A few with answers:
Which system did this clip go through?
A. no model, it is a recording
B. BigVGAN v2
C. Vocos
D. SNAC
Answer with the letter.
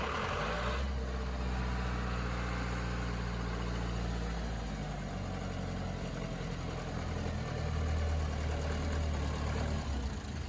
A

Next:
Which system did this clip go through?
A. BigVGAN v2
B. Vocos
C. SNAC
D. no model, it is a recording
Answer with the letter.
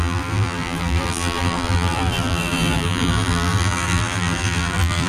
A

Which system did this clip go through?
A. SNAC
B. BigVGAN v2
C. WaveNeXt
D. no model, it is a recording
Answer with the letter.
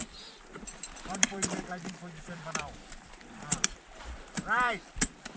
B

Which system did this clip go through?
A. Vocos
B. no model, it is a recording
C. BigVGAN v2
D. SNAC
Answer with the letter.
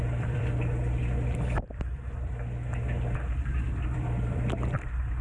C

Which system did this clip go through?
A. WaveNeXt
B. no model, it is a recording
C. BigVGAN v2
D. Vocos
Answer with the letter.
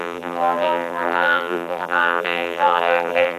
C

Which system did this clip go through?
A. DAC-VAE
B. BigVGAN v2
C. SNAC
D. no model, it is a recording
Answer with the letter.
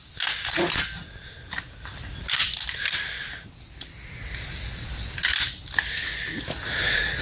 D